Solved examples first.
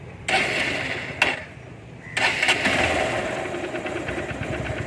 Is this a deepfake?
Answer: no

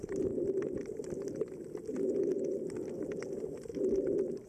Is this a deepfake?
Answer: no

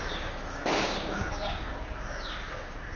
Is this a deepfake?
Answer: yes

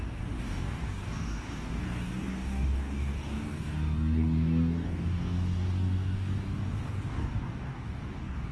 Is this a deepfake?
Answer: yes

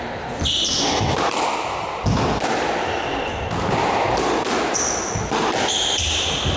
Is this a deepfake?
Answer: no